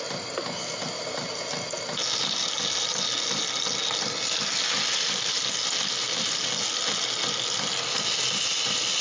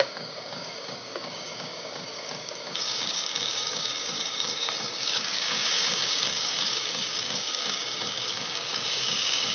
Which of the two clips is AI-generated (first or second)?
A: second